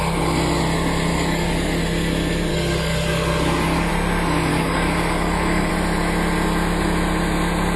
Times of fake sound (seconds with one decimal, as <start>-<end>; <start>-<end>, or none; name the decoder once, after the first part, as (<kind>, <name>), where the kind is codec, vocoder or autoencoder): 1.1-1.8 (codec, DAC); 2.5-3.9; 4.5-5.7